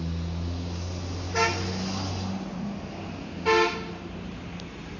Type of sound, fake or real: real